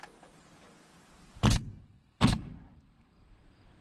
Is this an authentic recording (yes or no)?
no